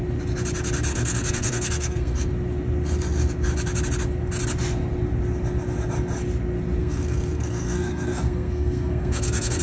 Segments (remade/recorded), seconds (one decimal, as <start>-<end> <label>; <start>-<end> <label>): 0.0-0.9 recorded; 0.9-2.3 remade; 2.3-6.8 recorded; 6.8-9.6 remade